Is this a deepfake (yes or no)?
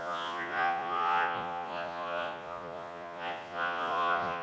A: yes